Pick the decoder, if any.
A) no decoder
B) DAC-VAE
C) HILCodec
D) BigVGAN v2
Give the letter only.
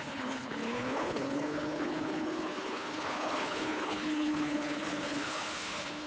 C